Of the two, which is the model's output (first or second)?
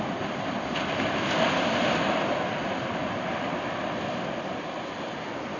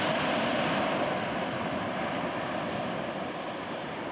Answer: second